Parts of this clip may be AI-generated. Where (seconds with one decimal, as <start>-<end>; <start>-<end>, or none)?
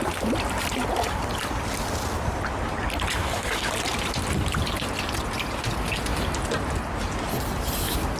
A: 3.2-3.7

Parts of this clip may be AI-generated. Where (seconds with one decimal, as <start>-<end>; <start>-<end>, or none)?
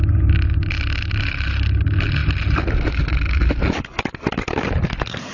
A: none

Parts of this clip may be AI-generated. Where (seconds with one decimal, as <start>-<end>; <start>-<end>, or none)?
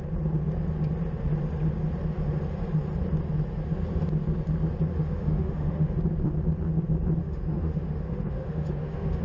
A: 4.9-5.9; 7.2-9.2